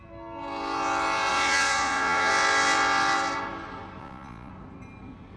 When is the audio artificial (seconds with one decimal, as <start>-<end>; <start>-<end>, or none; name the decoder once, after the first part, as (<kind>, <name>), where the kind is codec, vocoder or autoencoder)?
1.3-2.3 (vocoder, Vocos); 4.0-4.5